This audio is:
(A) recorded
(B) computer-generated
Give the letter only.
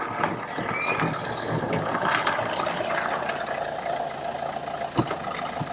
A